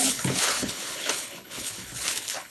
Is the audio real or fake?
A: fake